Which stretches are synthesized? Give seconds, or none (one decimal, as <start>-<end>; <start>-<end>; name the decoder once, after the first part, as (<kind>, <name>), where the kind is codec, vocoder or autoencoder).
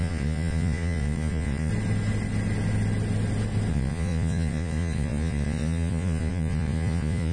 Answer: 0.0-1.7 (vocoder, Vocos); 3.7-7.3